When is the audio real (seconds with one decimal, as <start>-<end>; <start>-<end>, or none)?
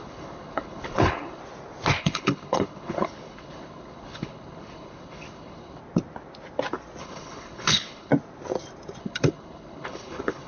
1.4-2.0; 5.8-7.0; 8.1-9.0